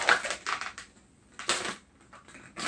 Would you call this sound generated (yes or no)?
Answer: no